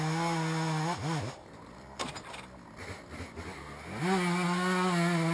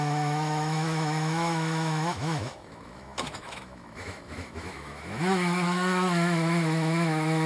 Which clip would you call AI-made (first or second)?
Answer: second